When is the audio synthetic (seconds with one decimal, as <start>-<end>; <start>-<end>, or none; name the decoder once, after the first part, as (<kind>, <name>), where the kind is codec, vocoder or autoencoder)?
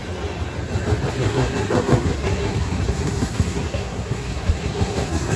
1.1-5.4 (codec, SNAC)